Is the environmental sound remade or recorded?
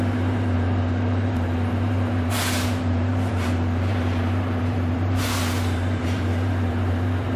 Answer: remade